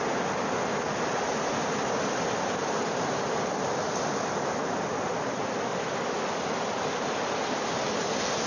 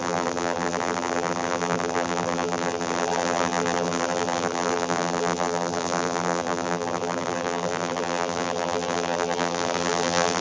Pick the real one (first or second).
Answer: first